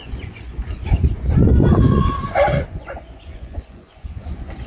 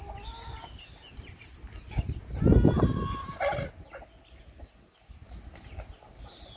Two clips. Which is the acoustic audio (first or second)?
second